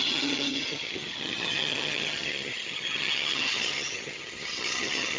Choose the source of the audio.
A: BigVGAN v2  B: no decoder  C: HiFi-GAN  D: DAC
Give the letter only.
C